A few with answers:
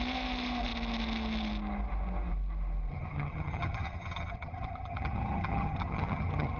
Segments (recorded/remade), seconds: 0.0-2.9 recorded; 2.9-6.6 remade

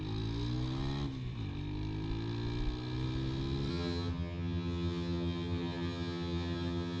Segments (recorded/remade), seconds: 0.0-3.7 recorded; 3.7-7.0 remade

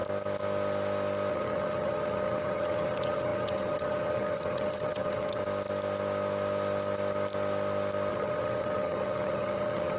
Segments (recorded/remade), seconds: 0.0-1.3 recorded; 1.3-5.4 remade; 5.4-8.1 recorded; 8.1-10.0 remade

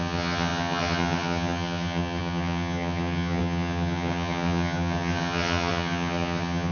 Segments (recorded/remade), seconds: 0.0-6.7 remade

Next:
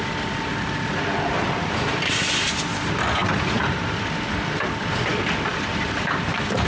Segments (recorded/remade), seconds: 0.0-6.7 recorded

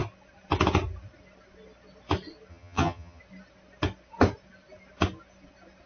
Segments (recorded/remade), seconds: 0.0-2.5 recorded; 2.5-3.2 remade; 3.2-5.9 recorded